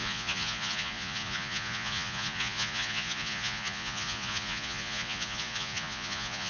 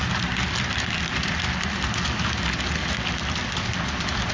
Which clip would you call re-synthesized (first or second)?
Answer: first